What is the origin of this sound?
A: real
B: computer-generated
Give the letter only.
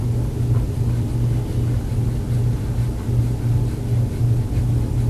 A